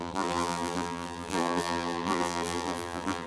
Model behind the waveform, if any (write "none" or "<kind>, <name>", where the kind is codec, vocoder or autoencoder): vocoder, BigVGAN v2